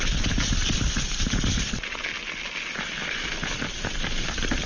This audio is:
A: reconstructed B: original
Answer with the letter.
B